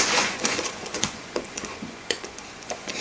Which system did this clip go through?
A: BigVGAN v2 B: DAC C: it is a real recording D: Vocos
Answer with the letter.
D